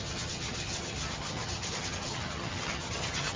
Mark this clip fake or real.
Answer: fake